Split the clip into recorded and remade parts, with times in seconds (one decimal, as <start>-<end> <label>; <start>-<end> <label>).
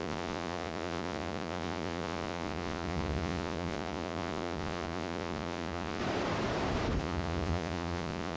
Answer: 0.0-6.0 remade; 6.0-7.0 recorded; 7.0-8.4 remade